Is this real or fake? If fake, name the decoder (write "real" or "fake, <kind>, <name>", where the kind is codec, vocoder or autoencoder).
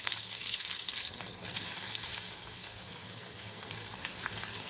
fake, codec, SNAC